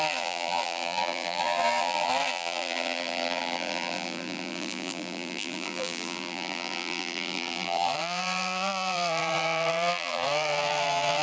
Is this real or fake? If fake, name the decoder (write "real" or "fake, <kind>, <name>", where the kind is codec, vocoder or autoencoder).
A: fake, vocoder, BigVGAN v2